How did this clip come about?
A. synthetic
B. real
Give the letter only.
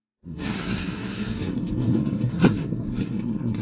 A